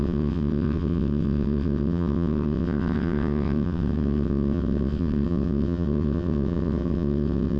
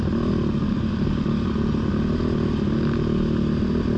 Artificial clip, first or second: first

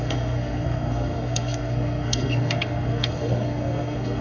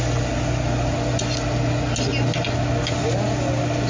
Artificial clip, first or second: first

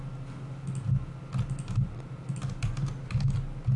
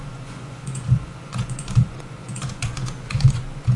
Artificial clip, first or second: second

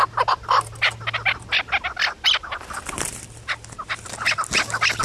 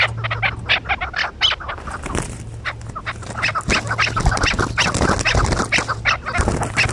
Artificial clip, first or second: first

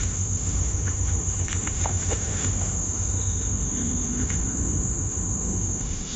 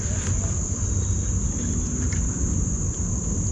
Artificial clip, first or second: first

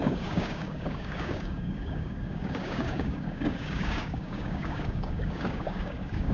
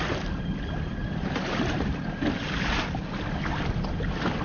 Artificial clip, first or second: first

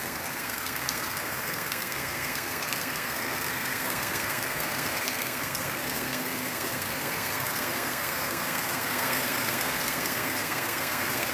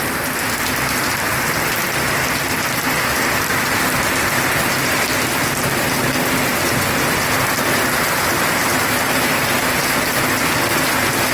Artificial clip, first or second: first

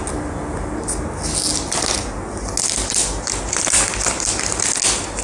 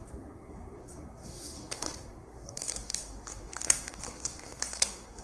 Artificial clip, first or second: second